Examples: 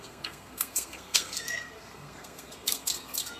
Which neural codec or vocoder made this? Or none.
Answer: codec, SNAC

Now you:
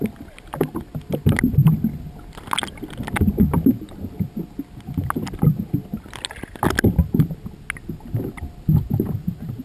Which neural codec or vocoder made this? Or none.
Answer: none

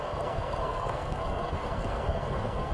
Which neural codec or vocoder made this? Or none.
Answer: codec, SNAC